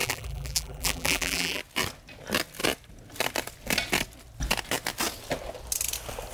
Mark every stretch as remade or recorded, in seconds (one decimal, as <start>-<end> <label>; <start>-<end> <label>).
0.0-1.6 remade; 1.6-6.3 recorded